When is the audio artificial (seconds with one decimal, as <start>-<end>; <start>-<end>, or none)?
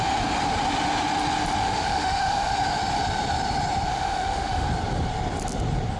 1.6-2.5; 3.9-4.7